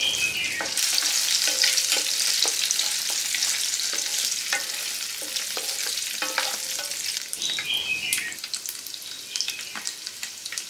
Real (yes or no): yes